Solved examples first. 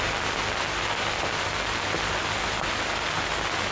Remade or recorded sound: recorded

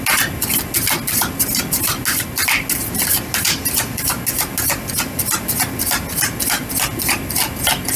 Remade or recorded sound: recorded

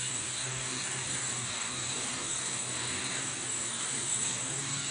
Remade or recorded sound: remade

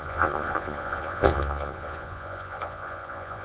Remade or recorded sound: remade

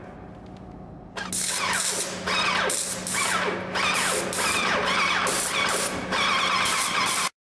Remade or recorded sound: recorded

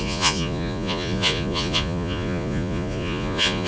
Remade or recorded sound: remade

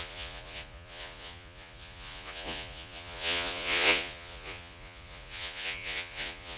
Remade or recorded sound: remade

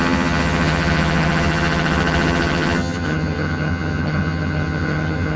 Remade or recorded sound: remade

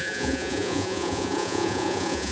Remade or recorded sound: remade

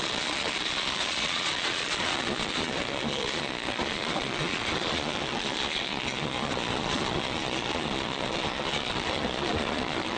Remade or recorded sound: remade